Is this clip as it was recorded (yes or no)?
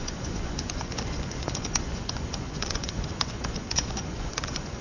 no